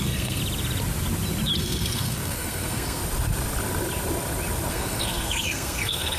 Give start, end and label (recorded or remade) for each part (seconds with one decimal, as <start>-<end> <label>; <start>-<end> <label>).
0.0-0.4 remade; 0.4-1.6 recorded; 1.6-3.0 remade; 3.0-4.7 recorded; 4.7-6.2 remade